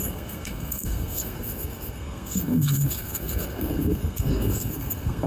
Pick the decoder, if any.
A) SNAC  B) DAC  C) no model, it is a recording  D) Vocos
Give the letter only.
A